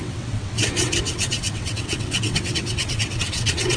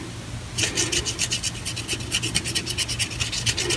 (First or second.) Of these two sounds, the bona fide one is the second